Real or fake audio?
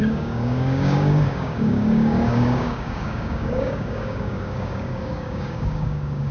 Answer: fake